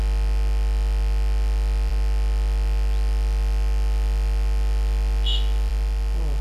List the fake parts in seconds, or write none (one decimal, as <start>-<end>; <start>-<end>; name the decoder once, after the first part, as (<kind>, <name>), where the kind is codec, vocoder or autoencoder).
none